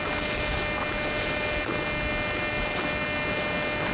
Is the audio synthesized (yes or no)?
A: no